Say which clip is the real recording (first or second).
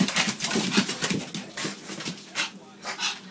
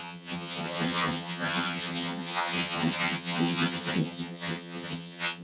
first